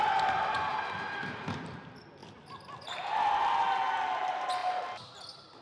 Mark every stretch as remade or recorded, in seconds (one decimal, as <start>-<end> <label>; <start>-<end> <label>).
0.0-5.6 recorded